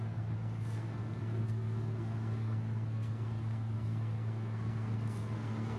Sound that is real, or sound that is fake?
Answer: fake